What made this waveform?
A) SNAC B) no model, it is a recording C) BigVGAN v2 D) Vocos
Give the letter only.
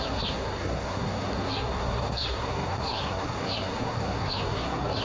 A